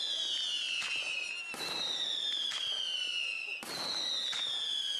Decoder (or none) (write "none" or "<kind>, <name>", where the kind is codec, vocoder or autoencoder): none